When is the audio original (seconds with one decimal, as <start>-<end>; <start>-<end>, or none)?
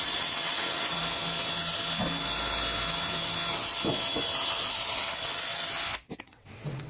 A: 1.0-5.1; 5.5-6.2